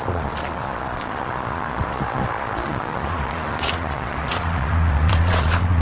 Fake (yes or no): yes